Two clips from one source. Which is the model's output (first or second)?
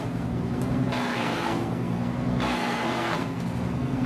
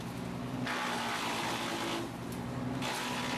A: first